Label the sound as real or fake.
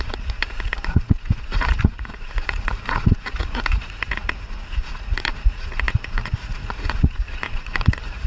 fake